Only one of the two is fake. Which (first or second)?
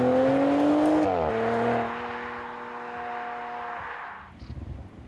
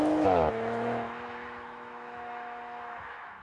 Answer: second